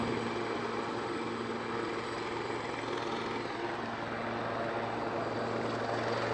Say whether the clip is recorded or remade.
recorded